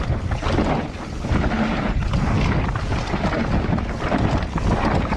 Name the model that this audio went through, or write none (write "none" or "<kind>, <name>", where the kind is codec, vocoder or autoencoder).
none